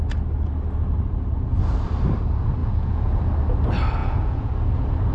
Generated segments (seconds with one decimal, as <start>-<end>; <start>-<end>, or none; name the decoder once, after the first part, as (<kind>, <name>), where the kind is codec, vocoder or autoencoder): 2.6-3.3 (vocoder, Vocos); 4.0-4.5